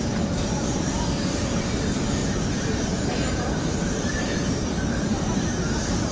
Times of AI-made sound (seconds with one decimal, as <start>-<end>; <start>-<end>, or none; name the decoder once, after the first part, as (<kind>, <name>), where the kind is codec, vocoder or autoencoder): 0.0-6.1 (vocoder, BigVGAN v2)